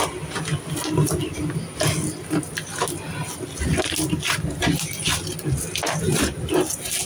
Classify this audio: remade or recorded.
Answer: recorded